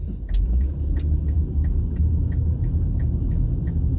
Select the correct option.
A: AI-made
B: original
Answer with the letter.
B